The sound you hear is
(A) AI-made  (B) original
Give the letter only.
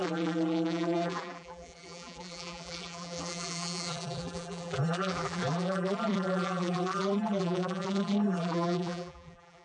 A